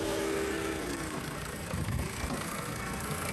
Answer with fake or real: fake